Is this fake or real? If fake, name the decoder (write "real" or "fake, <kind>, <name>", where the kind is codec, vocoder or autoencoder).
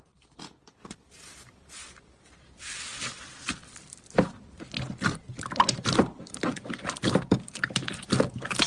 fake, vocoder, BigVGAN v2